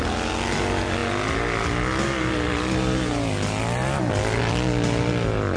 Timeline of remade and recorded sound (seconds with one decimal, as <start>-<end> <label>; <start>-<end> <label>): 0.0-5.6 recorded